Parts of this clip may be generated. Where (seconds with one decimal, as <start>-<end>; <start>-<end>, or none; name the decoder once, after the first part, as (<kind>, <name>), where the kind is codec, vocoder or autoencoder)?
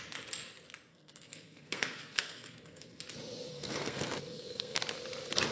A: 0.9-3.0 (codec, SNAC); 3.5-4.8